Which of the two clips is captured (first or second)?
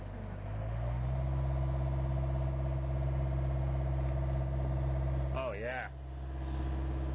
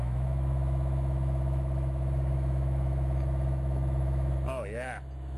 first